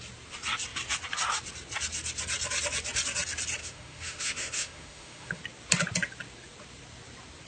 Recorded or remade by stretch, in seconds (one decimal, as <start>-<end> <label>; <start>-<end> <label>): 0.0-3.6 recorded; 3.6-5.4 remade; 5.4-7.5 recorded